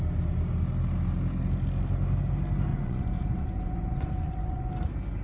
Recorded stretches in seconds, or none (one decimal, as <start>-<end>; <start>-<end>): 0.0-2.7; 4.7-5.2